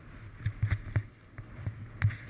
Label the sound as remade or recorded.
recorded